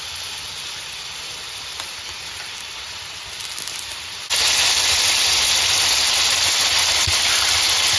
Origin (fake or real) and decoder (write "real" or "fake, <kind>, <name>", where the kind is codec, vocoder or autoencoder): real